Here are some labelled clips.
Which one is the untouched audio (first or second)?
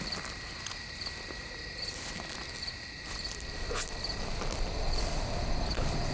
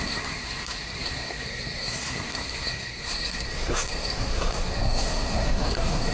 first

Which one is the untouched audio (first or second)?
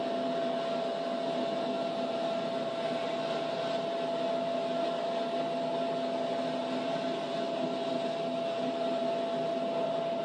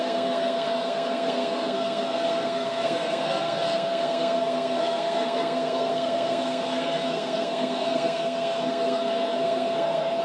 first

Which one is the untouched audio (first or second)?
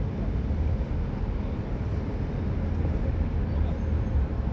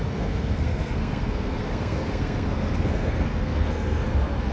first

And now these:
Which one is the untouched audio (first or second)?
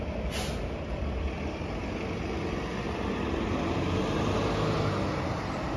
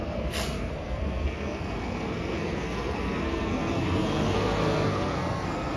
first